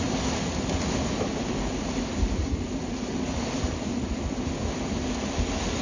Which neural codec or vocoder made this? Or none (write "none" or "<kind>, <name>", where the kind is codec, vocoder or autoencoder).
none